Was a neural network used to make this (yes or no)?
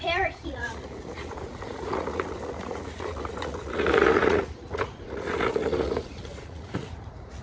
yes